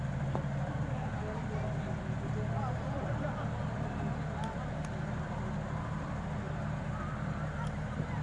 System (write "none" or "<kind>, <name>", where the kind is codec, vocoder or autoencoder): none